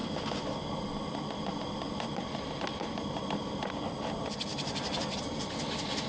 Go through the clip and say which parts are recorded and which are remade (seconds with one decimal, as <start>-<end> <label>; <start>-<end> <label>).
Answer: 0.0-6.1 recorded